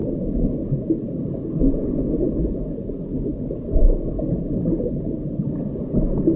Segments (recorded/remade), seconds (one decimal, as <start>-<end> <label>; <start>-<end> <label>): 0.0-6.4 recorded